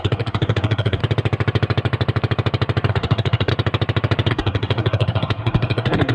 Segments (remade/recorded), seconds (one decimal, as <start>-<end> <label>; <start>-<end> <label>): 0.0-1.0 remade; 1.0-2.9 recorded; 2.9-3.5 remade; 3.5-4.3 recorded; 4.3-6.1 remade

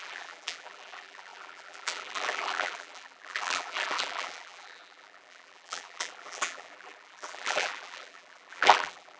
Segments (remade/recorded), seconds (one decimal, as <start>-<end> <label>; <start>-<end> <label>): 0.0-9.2 remade

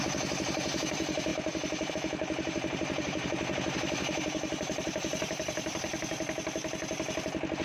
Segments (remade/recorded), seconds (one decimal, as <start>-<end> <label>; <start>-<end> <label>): 0.0-5.9 remade; 5.9-7.6 recorded